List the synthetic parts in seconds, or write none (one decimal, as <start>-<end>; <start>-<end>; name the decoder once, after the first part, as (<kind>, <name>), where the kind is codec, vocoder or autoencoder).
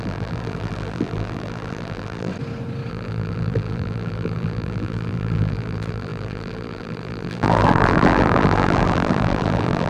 0.0-2.3 (vocoder, BigVGAN v2); 2.9-9.9